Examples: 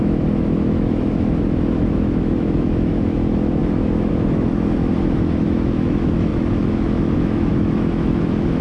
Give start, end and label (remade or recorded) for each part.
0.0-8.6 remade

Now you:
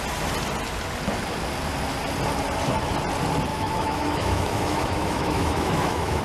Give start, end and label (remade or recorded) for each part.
0.0-3.5 recorded; 3.5-6.2 remade

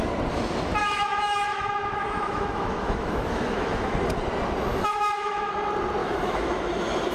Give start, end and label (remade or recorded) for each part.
0.0-0.8 recorded; 0.8-3.9 remade; 3.9-4.7 recorded; 4.7-5.5 remade; 5.5-6.0 recorded; 6.0-6.5 remade; 6.5-7.1 recorded

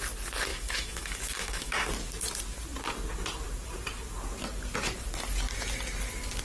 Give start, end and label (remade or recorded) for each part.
0.0-0.5 recorded; 0.5-1.9 remade; 1.9-6.4 recorded

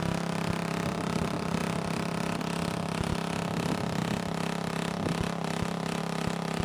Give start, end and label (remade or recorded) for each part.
0.0-6.6 recorded

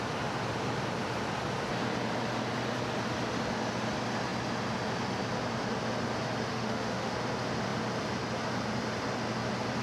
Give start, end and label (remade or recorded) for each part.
0.0-6.5 recorded; 6.5-7.1 remade; 7.1-9.8 recorded

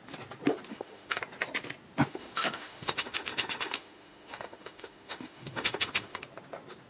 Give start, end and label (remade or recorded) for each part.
0.0-0.7 recorded; 0.7-1.2 remade; 1.2-2.1 recorded; 2.1-6.2 remade; 6.2-6.9 recorded